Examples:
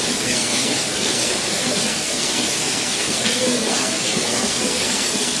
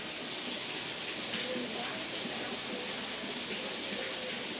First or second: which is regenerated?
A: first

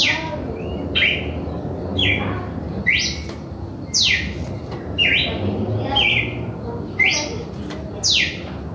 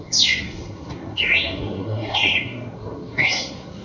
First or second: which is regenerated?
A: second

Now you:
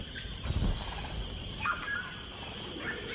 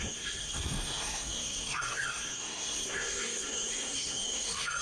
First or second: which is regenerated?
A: second